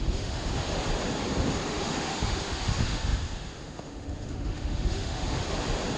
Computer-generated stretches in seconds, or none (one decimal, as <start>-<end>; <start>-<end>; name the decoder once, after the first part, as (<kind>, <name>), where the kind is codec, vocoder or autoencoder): 0.0-0.9 (autoencoder, DAC-VAE); 1.7-5.4